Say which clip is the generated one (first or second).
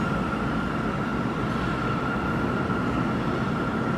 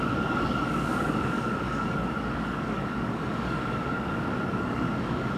second